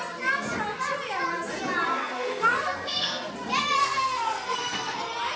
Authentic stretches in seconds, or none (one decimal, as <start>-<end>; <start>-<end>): 0.0-1.9; 3.3-3.8; 5.0-5.4